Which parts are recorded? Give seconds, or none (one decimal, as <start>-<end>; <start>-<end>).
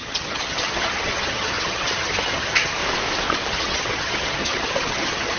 2.8-3.3